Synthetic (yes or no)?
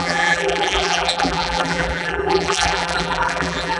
yes